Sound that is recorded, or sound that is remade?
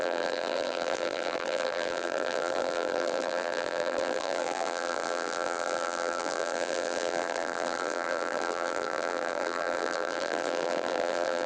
remade